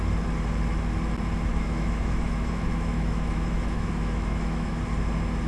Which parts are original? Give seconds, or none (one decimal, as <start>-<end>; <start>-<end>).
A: 0.0-1.5; 4.8-5.5